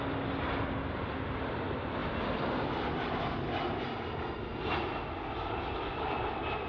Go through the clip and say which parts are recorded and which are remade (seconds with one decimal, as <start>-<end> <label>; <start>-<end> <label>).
0.0-6.7 recorded

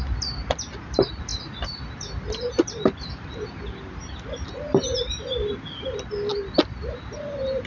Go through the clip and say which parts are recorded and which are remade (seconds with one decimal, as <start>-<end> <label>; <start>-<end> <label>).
0.0-7.7 recorded